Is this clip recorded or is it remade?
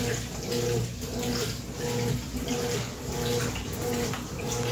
recorded